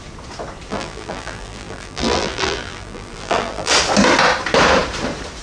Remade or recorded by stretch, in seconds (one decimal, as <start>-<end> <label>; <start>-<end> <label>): 0.0-0.7 recorded; 0.7-3.7 remade; 3.7-5.4 recorded

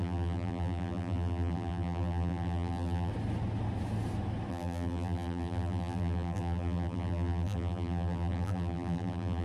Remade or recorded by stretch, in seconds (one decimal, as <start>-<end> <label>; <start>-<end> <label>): 0.0-3.1 remade; 3.1-4.5 recorded; 4.5-9.4 remade

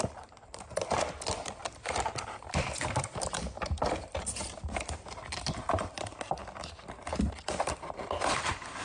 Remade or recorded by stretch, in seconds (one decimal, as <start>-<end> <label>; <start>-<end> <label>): 0.0-6.4 remade; 6.4-7.3 recorded; 7.3-8.8 remade

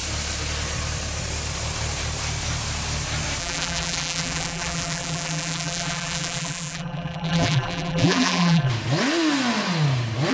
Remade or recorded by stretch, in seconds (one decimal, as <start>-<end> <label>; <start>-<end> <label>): 0.0-3.4 recorded; 3.4-8.7 remade; 8.7-10.3 recorded

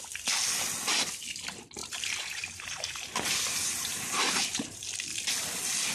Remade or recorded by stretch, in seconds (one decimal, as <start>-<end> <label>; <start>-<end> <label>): 0.0-1.8 recorded; 1.8-4.9 remade; 4.9-5.9 recorded

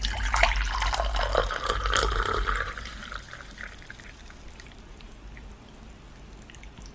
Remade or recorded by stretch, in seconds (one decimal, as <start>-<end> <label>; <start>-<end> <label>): 0.0-1.4 recorded; 1.4-5.5 remade; 5.5-6.9 recorded

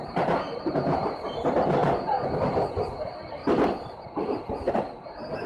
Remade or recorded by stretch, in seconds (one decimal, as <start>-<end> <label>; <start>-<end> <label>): 0.0-1.8 remade; 1.8-2.9 recorded; 2.9-3.4 remade; 3.4-4.7 recorded; 4.7-5.5 remade